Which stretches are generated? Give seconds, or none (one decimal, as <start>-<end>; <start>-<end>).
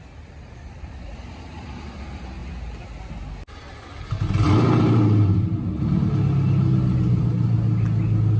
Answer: none